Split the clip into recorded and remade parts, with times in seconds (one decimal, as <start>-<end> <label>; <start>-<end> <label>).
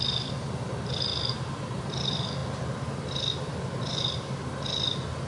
0.0-5.3 recorded